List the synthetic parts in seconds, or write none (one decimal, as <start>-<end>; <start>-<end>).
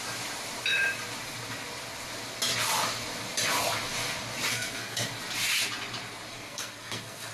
4.5-5.1; 6.3-7.3